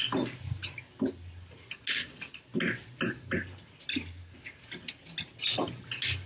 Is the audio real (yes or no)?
yes